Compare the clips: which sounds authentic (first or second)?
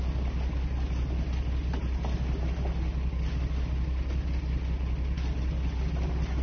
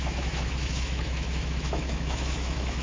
first